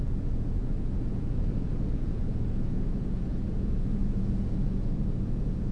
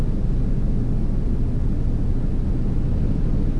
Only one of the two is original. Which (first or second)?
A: second